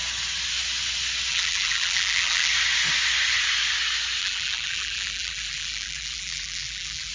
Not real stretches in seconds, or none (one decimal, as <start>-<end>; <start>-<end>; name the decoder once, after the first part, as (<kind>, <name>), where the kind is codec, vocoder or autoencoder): 1.3-2.5 (vocoder, BigVGAN v2); 4.2-7.1